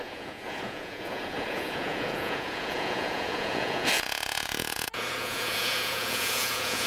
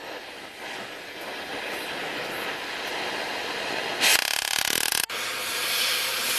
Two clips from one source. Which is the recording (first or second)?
second